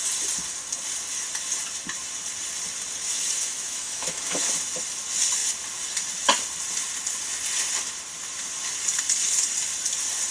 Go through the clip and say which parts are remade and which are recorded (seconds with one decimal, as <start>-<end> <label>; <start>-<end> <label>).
0.0-3.0 recorded; 3.0-4.5 remade; 4.5-10.3 recorded